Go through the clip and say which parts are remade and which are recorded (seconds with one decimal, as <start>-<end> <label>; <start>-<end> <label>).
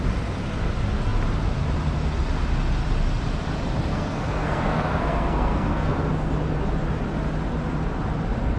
0.0-3.9 recorded; 3.9-6.3 remade; 6.3-8.6 recorded